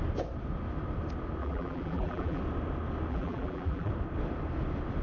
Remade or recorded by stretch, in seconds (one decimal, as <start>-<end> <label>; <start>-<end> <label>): 0.0-1.4 recorded; 1.4-2.4 remade; 2.4-3.1 recorded; 3.1-3.9 remade; 3.9-5.0 recorded

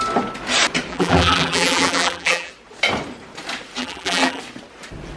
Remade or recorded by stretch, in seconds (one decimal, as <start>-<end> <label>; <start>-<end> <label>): 0.0-0.9 recorded; 0.9-2.5 remade; 2.5-3.8 recorded; 3.8-4.4 remade; 4.4-5.2 recorded